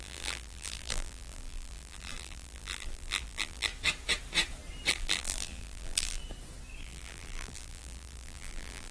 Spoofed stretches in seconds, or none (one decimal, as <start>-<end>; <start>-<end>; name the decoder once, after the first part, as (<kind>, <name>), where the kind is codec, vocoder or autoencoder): 0.0-3.7 (vocoder, BigVGAN v2); 4.9-6.2; 6.8-8.9